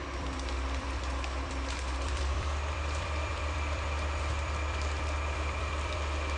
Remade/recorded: remade